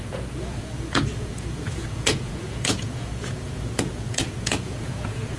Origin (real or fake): fake